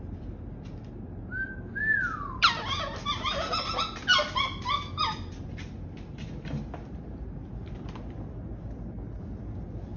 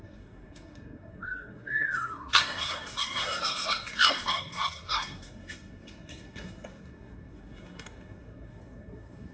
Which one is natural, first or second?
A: first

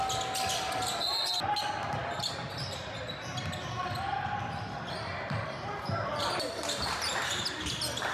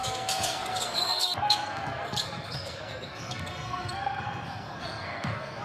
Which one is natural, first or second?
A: first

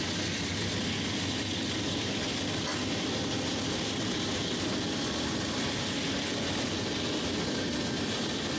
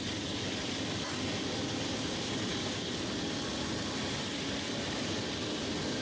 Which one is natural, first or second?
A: first